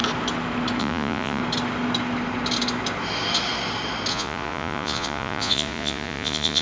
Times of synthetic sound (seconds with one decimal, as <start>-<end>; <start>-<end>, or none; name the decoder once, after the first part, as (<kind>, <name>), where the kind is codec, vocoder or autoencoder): 0.8-1.4 (vocoder, Vocos); 4.1-6.6